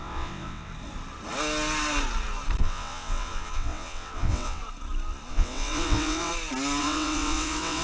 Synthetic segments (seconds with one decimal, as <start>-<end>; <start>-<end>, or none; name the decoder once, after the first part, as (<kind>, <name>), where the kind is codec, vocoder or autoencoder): 0.0-0.7 (vocoder, WaveNeXt); 2.6-4.6; 5.3-6.3; 6.8-7.8